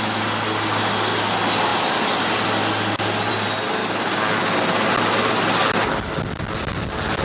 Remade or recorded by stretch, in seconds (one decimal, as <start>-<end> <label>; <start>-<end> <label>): 0.0-7.2 recorded